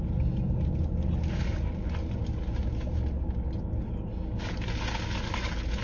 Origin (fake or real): real